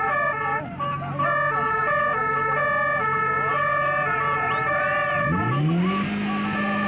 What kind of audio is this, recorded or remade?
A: recorded